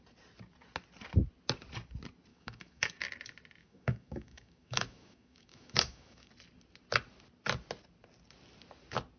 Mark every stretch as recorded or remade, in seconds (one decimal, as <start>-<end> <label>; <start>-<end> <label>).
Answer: 0.0-2.3 recorded; 2.3-2.9 remade; 2.9-3.6 recorded; 3.6-6.3 remade; 6.3-9.2 recorded